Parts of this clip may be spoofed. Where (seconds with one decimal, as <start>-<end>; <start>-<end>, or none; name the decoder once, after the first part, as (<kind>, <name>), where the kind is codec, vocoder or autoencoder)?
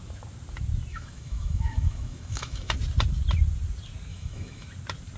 0.9-2.7 (autoencoder, DAC-VAE); 4.1-4.7